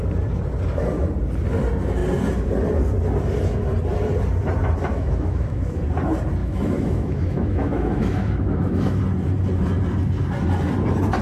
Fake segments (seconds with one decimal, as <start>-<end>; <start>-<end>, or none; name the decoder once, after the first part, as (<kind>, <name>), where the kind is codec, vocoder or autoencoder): 4.9-5.8 (autoencoder, DAC-VAE); 6.4-9.0